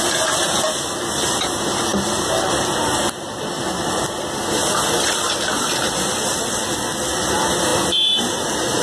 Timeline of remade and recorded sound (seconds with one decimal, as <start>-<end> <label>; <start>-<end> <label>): 0.0-4.6 recorded; 4.6-6.6 remade; 6.6-8.8 recorded